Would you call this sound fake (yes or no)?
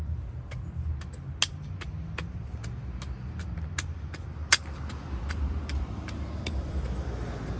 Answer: no